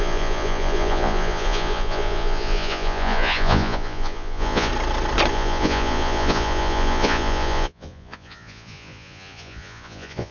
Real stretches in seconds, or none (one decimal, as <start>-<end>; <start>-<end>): 4.7-5.3

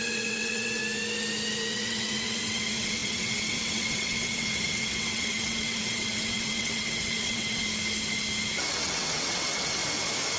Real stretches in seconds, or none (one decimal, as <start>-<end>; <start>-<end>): 0.8-1.7; 7.6-8.7; 9.8-10.4

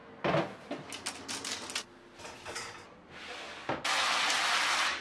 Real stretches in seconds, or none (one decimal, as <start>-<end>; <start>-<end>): 0.0-5.0

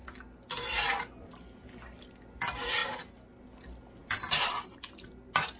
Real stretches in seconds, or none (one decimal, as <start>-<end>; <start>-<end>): 0.0-5.6

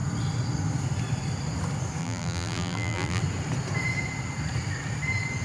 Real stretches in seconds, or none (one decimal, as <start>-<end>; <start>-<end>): 0.0-2.0; 3.2-5.4